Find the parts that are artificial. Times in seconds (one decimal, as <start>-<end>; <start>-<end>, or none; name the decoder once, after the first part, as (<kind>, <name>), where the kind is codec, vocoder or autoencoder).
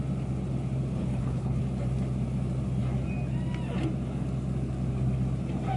1.0-1.6 (codec, HILCodec)